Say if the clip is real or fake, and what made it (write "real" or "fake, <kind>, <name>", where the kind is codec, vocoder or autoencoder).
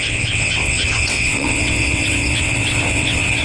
fake, vocoder, WaveNeXt